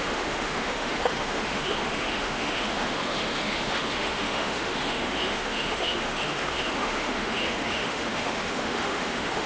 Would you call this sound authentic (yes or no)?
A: no